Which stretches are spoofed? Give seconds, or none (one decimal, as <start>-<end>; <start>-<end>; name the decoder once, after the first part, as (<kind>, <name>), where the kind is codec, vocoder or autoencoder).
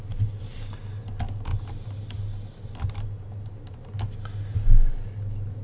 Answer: none